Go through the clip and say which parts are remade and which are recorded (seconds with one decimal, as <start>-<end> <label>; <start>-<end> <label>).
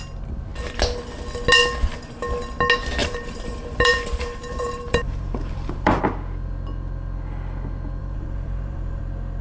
0.0-3.0 recorded; 3.0-6.0 remade; 6.0-8.0 recorded; 8.0-9.0 remade; 9.0-9.4 recorded